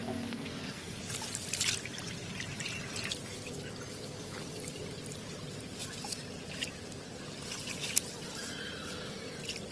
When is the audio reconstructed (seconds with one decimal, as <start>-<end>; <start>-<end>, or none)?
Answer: 0.0-1.0